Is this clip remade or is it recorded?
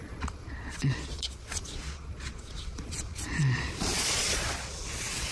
remade